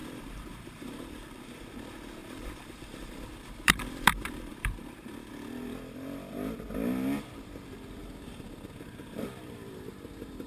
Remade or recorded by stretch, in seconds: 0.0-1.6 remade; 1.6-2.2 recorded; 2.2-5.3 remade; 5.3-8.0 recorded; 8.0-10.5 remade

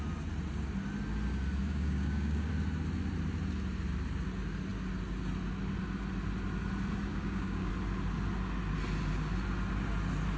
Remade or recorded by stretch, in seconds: 0.0-1.6 recorded; 1.6-2.5 remade; 2.5-7.1 recorded; 7.1-7.7 remade; 7.7-10.4 recorded

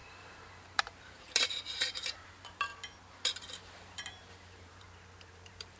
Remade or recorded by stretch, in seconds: 0.0-2.7 remade; 2.7-3.6 recorded; 3.6-5.8 remade